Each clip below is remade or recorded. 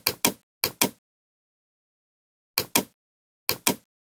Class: recorded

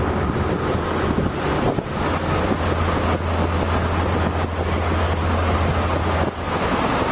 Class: recorded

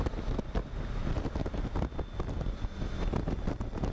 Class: recorded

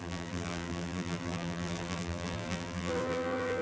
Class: remade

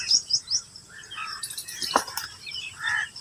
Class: remade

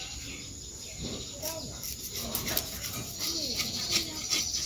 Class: recorded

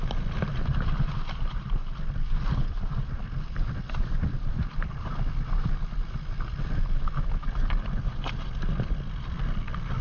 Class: recorded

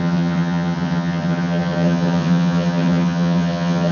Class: remade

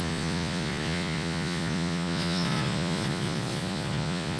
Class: remade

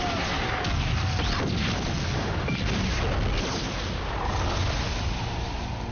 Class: recorded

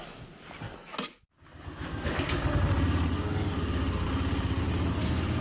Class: recorded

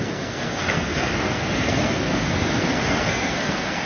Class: remade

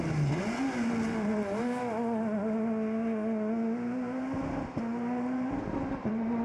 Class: recorded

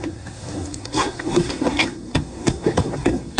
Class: remade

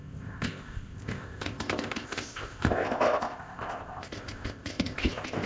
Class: remade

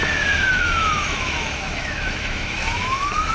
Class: remade